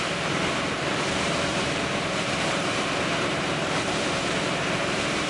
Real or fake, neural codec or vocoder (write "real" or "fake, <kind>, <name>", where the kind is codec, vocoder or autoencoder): fake, vocoder, BigVGAN v2